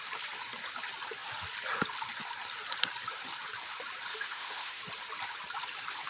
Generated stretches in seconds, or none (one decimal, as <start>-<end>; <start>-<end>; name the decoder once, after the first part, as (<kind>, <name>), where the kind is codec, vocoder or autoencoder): 4.1-4.8 (autoencoder, DAC-VAE)